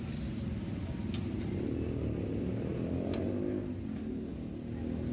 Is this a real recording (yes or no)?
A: yes